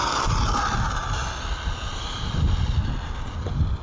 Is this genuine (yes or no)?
yes